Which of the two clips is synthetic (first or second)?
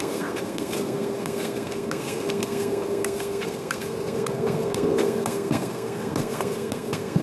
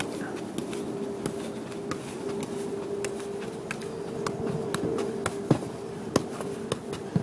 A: first